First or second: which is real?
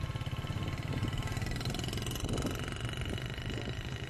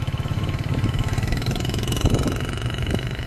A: first